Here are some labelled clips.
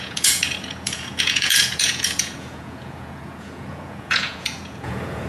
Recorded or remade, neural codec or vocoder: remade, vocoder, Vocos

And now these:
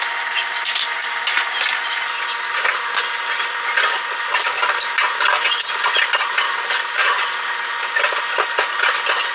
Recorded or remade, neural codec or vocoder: recorded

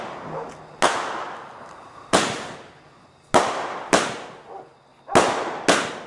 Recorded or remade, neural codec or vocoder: recorded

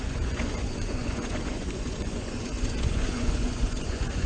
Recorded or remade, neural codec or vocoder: remade, vocoder, Vocos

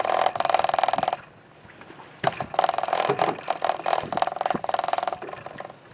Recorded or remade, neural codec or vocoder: recorded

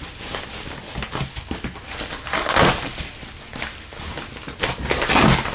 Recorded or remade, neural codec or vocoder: recorded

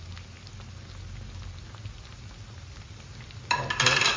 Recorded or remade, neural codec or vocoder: recorded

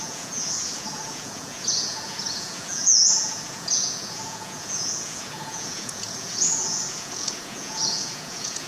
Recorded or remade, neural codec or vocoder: remade, vocoder, Vocos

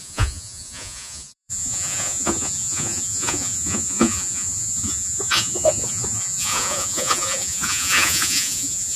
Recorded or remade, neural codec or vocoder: remade, vocoder, Vocos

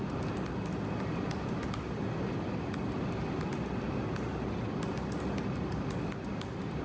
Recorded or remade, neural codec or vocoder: recorded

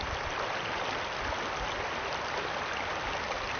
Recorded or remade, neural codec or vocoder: recorded